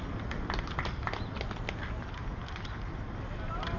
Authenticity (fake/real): real